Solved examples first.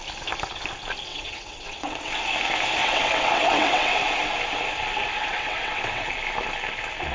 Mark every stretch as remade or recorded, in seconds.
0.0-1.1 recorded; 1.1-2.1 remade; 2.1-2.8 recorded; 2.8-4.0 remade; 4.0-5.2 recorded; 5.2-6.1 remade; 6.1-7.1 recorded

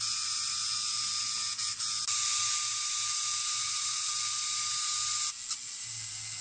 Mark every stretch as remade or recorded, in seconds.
0.0-3.6 recorded; 3.6-4.1 remade; 4.1-6.4 recorded